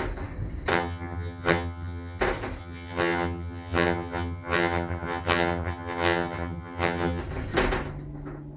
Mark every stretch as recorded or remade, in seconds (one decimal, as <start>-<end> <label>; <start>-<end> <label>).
0.0-0.7 recorded; 0.7-2.2 remade; 2.2-2.6 recorded; 2.6-7.2 remade; 7.2-8.6 recorded